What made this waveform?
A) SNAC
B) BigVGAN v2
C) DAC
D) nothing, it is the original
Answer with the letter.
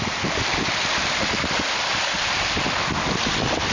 D